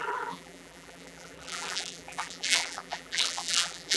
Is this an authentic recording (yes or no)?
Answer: no